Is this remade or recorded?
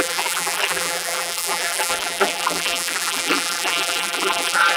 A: remade